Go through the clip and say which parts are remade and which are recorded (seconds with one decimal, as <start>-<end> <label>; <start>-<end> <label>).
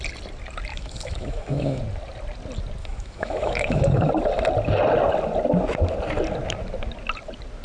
0.0-0.7 recorded; 0.7-1.8 remade; 1.8-2.8 recorded; 2.8-4.1 remade; 4.1-7.6 recorded